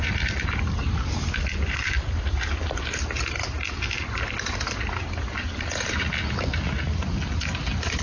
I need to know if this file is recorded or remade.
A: recorded